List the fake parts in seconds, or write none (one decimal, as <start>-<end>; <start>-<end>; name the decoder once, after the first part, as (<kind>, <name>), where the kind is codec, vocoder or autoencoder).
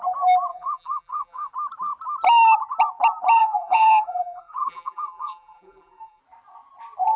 0.5-1.5 (vocoder, BigVGAN v2); 3.4-6.2